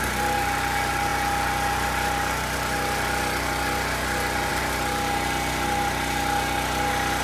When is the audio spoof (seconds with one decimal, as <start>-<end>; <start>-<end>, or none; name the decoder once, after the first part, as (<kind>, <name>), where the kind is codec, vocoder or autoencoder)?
none